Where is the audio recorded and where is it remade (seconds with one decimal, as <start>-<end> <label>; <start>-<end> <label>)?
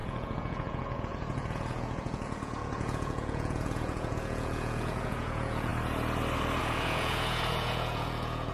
0.0-5.7 remade; 5.7-6.6 recorded; 6.6-8.5 remade